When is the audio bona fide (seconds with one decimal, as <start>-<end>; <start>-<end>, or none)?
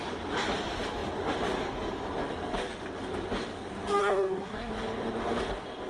0.0-4.0; 4.7-5.9